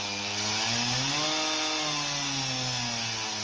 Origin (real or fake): real